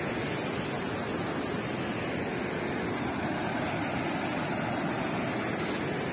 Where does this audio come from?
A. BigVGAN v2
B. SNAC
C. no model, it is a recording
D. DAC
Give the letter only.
C